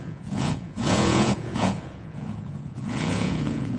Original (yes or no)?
no